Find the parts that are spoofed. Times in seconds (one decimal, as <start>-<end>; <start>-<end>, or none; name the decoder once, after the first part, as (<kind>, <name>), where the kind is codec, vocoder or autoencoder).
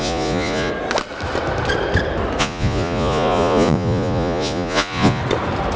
0.0-0.7 (vocoder, Vocos); 2.4-5.2